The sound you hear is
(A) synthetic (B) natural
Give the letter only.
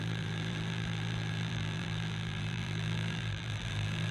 A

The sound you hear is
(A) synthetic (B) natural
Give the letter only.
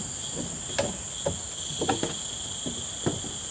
B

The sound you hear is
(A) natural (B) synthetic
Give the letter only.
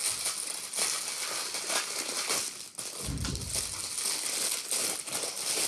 A